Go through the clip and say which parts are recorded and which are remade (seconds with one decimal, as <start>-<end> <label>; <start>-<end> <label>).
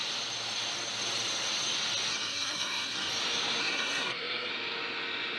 0.0-2.1 recorded; 2.1-3.1 remade; 3.1-3.6 recorded; 3.6-4.5 remade; 4.5-5.4 recorded